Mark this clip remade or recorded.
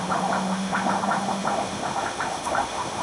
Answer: remade